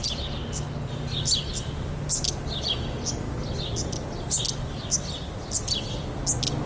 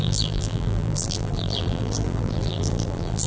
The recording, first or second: first